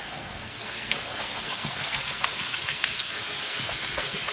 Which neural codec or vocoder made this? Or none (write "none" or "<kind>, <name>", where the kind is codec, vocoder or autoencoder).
codec, SNAC